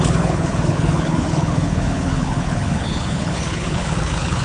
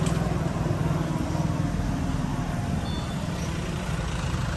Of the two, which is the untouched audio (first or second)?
second